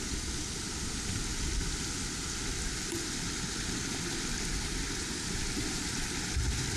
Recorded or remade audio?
recorded